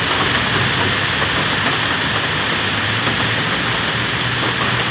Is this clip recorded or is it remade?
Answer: recorded